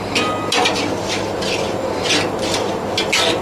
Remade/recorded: recorded